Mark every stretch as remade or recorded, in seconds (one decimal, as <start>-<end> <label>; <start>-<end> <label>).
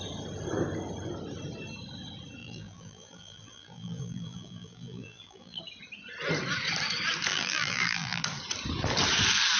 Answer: 0.0-2.4 recorded; 2.4-5.6 remade; 5.6-7.3 recorded; 7.3-8.2 remade; 8.2-9.6 recorded